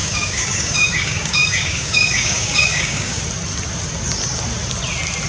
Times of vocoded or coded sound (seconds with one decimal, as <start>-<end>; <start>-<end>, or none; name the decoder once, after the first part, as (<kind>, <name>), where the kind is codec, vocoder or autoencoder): 0.0-3.2 (codec, DAC)